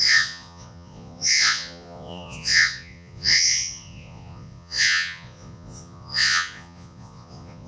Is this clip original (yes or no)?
no